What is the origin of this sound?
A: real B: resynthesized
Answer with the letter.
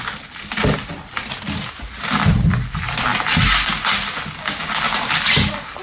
A